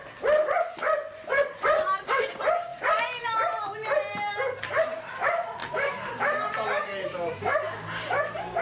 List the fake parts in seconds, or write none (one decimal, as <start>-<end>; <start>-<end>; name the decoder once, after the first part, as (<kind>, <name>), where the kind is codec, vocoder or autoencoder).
5.6-7.3 (vocoder, BigVGAN v2)